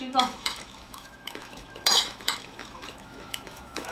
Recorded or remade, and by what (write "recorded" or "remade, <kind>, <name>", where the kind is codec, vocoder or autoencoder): remade, autoencoder, DAC-VAE